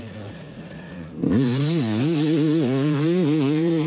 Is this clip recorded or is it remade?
remade